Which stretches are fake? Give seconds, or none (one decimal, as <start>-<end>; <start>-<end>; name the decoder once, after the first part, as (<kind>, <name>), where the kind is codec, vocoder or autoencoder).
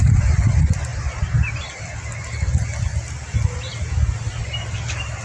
none